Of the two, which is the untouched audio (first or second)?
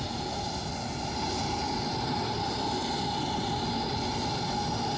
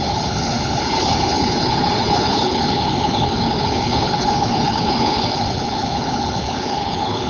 first